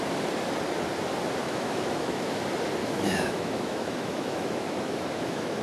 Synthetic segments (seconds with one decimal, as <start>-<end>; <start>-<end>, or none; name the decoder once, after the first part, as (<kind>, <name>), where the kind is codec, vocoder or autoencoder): 1.4-2.4 (autoencoder, DAC-VAE); 2.8-5.6